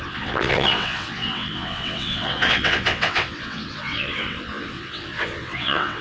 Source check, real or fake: fake